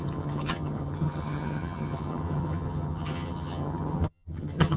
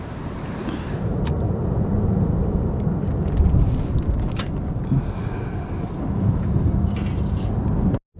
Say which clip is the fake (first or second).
first